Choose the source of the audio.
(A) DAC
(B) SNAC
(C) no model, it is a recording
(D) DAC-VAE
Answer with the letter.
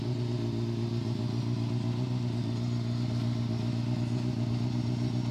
C